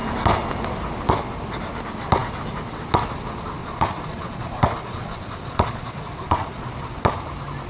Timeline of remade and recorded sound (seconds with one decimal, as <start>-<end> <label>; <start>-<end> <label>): 0.0-3.6 recorded; 3.6-6.7 remade; 6.7-7.7 recorded